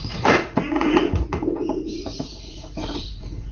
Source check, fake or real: fake